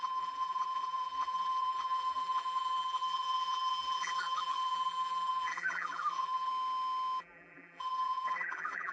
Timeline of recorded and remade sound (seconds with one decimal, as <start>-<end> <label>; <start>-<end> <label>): 0.0-6.5 remade; 6.5-7.2 recorded; 7.2-8.9 remade